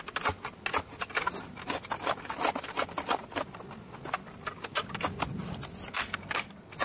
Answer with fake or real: real